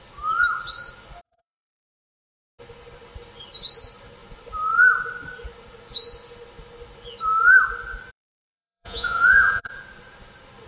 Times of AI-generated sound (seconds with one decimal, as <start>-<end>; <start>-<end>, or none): 1.2-2.6; 8.1-9.7